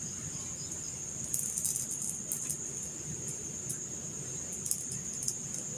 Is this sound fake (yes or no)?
no